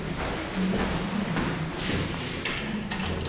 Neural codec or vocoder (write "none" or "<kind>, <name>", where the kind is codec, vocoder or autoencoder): none